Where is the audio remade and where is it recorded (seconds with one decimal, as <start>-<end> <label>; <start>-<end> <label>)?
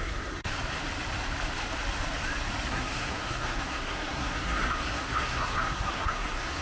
0.0-0.5 remade; 0.5-2.7 recorded; 2.7-6.6 remade